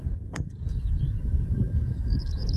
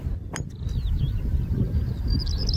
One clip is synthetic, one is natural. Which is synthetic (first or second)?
first